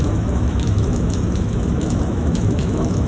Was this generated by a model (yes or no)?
yes